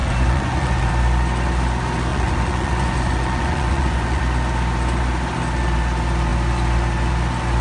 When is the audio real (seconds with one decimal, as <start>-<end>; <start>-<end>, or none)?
0.9-2.1; 4.2-7.6